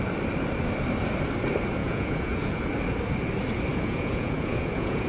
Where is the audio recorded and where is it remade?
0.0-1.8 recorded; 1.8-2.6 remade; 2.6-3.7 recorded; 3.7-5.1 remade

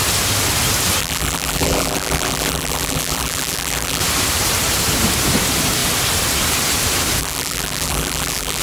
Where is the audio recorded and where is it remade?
0.0-1.0 recorded; 1.0-4.0 remade; 4.0-7.2 recorded; 7.2-8.6 remade